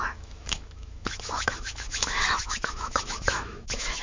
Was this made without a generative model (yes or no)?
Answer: no